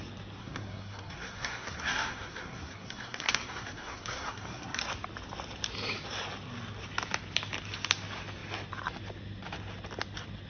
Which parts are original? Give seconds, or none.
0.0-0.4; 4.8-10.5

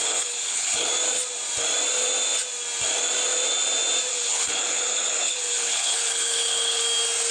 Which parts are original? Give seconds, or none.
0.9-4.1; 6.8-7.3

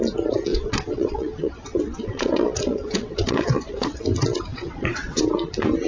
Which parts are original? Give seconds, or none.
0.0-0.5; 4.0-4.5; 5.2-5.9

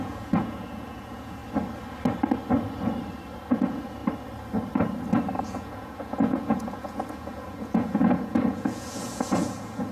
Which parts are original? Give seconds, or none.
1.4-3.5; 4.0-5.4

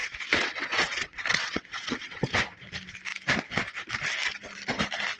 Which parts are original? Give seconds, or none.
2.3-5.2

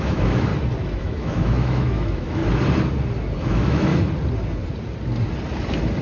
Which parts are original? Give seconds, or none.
0.5-1.0; 2.4-3.4; 3.9-6.0